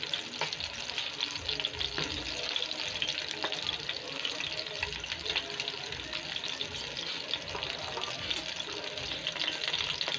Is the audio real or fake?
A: real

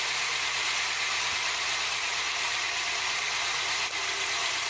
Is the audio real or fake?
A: real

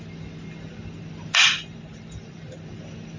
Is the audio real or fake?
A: real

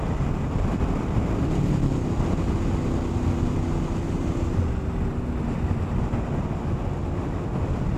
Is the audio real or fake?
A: real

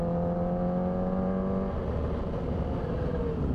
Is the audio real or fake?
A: real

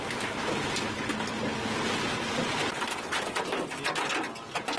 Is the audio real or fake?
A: real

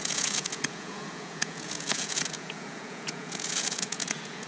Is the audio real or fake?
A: fake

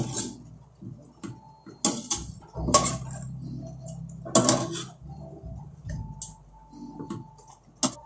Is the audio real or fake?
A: real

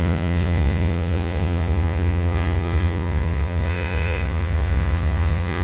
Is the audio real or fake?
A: fake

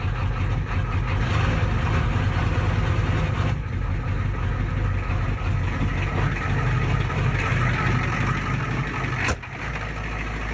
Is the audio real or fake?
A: real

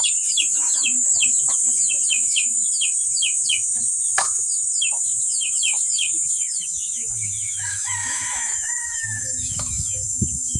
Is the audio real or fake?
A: fake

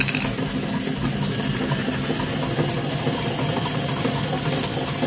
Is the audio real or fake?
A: real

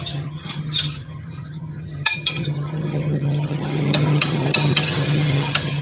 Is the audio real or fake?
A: fake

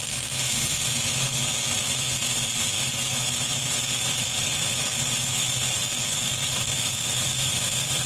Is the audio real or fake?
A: fake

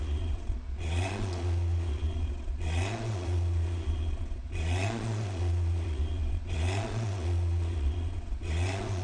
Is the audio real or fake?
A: fake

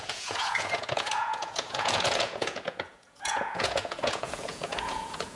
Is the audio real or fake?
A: fake